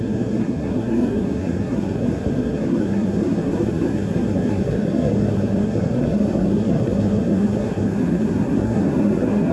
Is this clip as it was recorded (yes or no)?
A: no